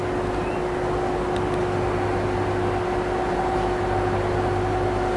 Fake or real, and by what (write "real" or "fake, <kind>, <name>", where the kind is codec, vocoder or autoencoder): real